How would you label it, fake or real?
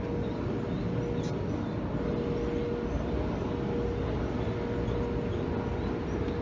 real